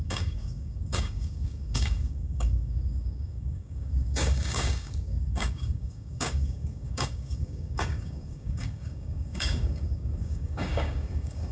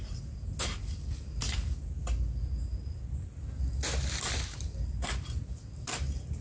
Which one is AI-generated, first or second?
first